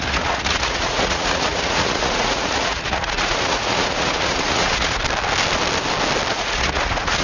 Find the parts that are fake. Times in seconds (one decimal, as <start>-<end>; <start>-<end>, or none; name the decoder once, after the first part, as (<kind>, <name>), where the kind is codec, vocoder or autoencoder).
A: 0.0-5.0 (vocoder, Vocos); 6.3-7.2